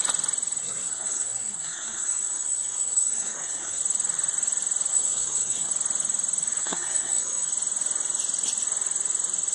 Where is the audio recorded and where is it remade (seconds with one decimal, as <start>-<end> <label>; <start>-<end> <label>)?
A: 0.0-0.6 recorded; 0.6-3.8 remade; 3.8-4.9 recorded; 4.9-5.7 remade; 5.7-6.6 recorded; 6.6-7.5 remade; 7.5-9.5 recorded